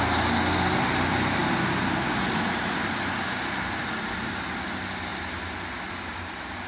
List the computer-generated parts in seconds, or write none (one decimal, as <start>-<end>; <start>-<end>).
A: none

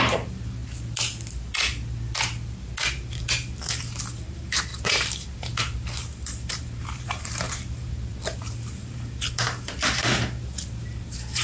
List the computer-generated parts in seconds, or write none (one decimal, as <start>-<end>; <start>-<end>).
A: 0.0-0.6; 2.9-11.4

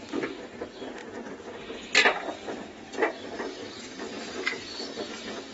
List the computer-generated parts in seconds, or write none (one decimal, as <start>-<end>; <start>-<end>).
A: none